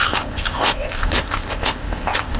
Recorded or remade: remade